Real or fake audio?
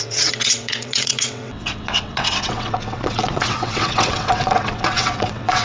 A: fake